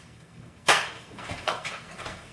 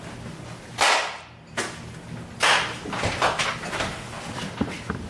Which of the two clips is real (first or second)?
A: second